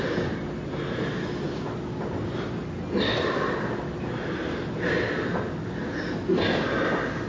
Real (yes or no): yes